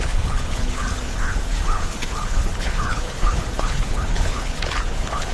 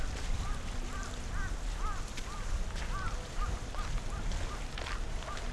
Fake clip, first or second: first